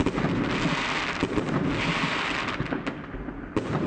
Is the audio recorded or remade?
recorded